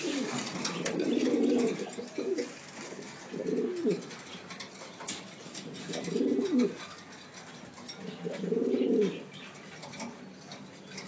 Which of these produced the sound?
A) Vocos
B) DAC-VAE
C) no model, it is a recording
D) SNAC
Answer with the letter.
C